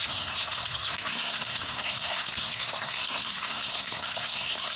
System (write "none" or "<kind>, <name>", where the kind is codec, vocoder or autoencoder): codec, SNAC